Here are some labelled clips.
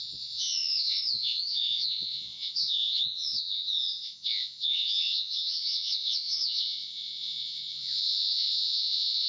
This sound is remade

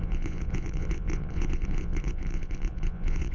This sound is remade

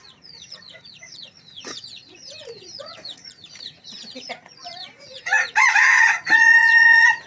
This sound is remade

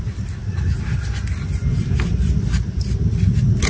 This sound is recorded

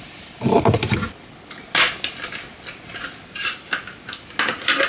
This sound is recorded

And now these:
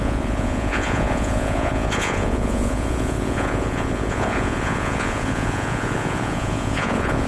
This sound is remade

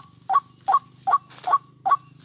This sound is recorded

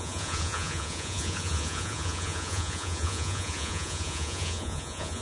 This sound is remade